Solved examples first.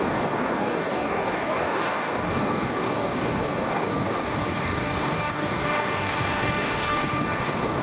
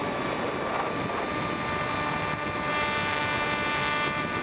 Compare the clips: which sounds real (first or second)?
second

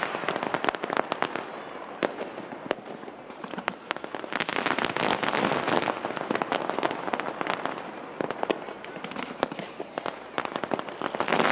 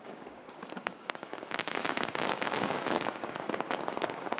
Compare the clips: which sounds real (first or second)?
first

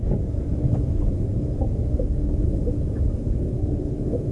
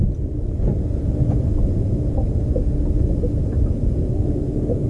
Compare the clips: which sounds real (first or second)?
second